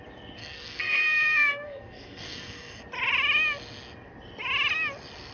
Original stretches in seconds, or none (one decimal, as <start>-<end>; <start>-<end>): 0.0-0.4; 2.8-5.3

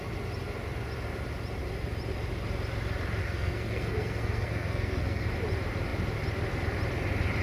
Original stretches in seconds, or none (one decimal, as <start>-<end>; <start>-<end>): 0.0-3.2; 5.3-7.4

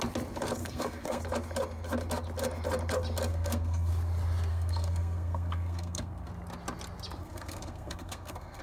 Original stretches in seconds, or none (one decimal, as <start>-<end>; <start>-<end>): 0.0-0.6; 1.2-3.3; 3.9-4.5; 6.3-7.2